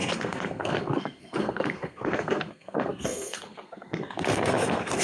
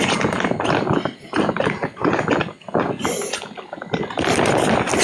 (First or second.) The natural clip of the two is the second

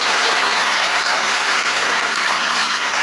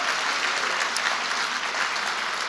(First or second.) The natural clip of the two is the second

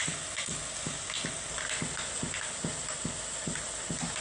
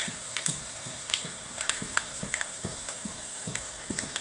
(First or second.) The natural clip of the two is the first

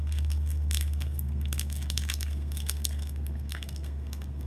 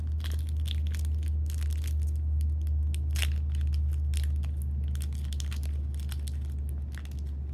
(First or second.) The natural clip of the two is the second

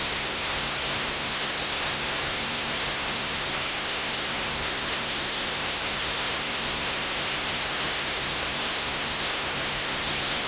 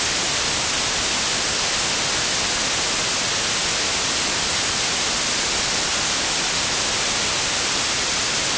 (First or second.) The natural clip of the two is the second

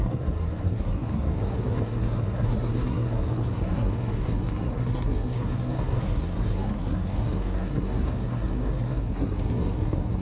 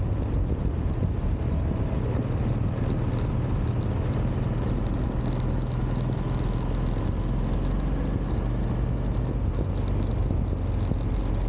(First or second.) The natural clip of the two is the second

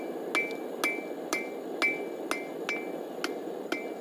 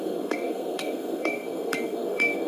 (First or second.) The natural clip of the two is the first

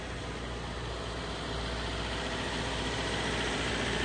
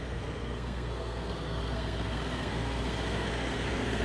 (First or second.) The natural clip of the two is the first